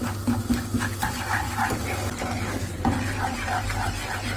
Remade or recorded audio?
recorded